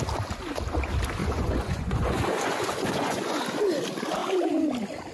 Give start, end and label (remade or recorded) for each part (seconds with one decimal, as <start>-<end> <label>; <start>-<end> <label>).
0.0-1.2 recorded; 1.2-3.4 remade; 3.4-5.1 recorded